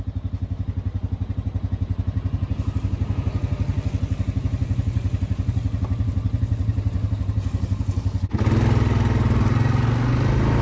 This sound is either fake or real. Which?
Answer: real